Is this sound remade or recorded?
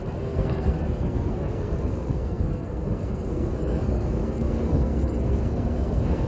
remade